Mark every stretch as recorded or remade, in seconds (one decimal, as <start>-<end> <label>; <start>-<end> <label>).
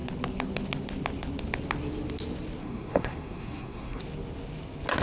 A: 0.0-2.6 recorded; 2.6-4.0 remade; 4.0-5.0 recorded